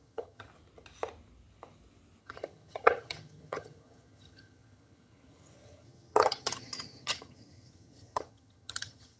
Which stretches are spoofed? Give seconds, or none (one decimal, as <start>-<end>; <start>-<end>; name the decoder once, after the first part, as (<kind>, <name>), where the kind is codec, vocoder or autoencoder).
0.0-0.5 (vocoder, HiFi-GAN); 2.2-9.2